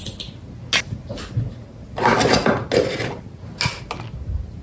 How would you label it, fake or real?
real